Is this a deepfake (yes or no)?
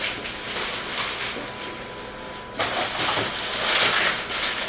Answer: no